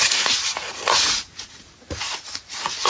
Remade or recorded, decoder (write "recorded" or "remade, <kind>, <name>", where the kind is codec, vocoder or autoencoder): remade, vocoder, Vocos